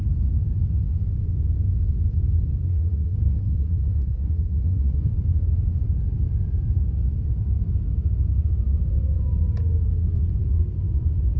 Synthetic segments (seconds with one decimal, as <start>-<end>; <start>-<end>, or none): 2.7-5.1

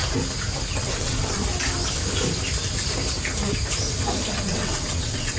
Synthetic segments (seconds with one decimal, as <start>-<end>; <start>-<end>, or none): 0.8-1.4; 4.4-5.4

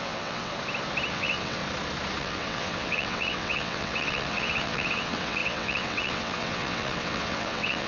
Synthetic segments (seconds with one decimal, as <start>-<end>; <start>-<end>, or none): 0.0-0.5; 1.1-1.6; 2.2-7.9

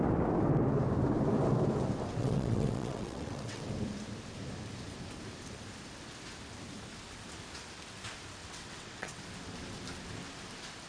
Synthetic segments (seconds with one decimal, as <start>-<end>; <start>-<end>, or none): 2.2-3.7; 8.4-9.2

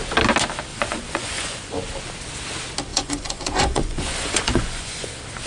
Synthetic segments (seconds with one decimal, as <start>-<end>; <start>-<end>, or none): 0.7-1.7; 2.9-5.1

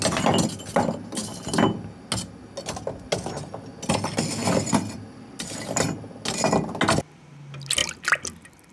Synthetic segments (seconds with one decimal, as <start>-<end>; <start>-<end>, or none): none

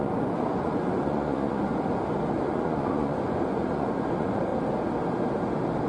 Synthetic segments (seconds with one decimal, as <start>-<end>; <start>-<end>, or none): 0.0-1.7; 2.3-4.5

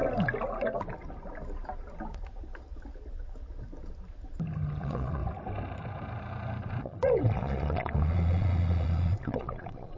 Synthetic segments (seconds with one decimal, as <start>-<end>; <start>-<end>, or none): 4.8-5.2; 6.8-10.0